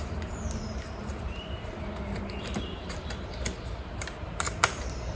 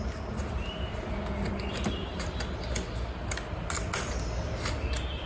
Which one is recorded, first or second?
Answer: second